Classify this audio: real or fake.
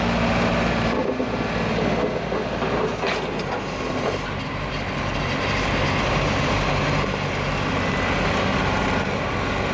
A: real